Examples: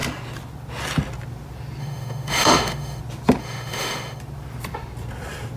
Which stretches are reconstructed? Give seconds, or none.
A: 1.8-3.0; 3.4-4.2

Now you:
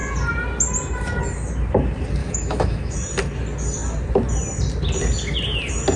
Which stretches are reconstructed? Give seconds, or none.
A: 2.2-3.1

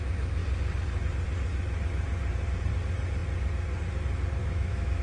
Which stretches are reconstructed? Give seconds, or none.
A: 4.4-5.0

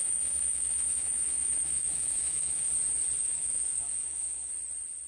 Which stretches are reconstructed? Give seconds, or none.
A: 0.0-2.7; 3.2-4.5

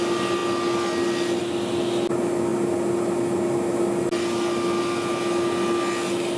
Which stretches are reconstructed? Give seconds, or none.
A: none

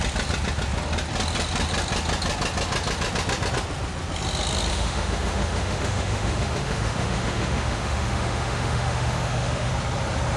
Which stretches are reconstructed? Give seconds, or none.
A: 4.7-9.7